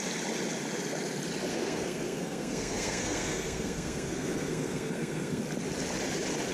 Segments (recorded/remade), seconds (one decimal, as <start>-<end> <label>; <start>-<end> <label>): 0.0-1.5 recorded; 1.5-5.4 remade; 5.4-6.5 recorded